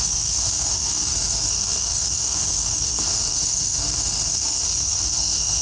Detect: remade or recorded remade